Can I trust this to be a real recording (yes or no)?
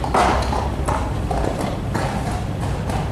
yes